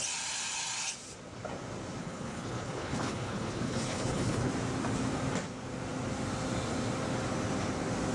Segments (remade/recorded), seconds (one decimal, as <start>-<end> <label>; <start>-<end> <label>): 0.0-2.0 recorded; 2.0-4.5 remade; 4.5-8.1 recorded